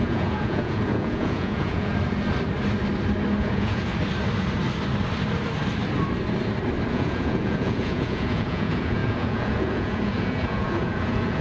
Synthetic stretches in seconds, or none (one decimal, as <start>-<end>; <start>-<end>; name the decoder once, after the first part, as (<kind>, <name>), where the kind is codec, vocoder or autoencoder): 0.0-1.9 (vocoder, Vocos); 3.4-3.9; 6.9-11.4